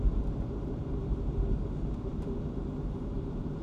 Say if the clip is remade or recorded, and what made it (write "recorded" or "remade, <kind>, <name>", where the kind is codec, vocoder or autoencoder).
remade, vocoder, BigVGAN v2